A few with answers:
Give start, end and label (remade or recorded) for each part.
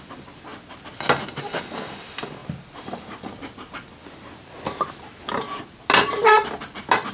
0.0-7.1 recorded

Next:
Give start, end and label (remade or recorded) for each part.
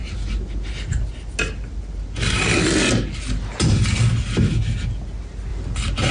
0.0-6.1 recorded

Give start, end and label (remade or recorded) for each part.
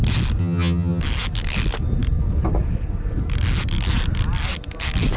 0.0-0.4 recorded; 0.4-1.0 remade; 1.0-5.2 recorded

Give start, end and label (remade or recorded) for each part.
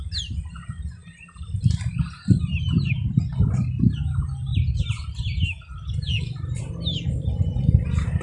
0.0-1.0 recorded; 1.0-1.9 remade; 1.9-4.5 recorded; 4.5-6.6 remade; 6.6-8.2 recorded